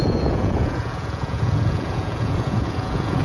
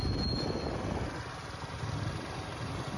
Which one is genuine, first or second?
second